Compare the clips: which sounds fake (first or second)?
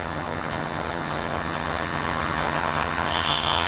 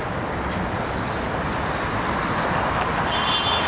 first